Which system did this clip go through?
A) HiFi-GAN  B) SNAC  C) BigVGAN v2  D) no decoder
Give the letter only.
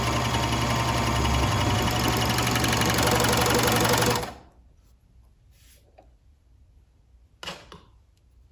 D